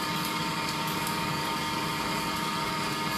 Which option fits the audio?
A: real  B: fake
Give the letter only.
B